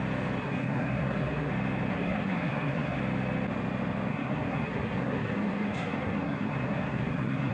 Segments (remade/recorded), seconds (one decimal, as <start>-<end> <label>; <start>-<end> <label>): 0.0-0.4 recorded; 0.4-1.5 remade; 1.5-1.9 recorded; 1.9-3.0 remade; 3.0-4.1 recorded; 4.1-7.5 remade